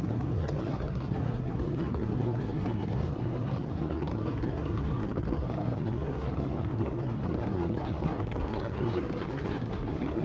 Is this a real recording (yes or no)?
no